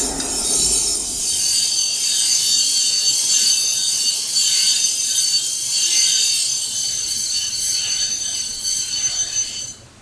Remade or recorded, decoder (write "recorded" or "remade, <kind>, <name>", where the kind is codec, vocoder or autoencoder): recorded